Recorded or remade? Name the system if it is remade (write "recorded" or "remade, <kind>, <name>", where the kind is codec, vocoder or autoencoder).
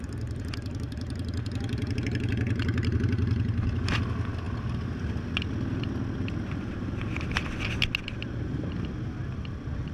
recorded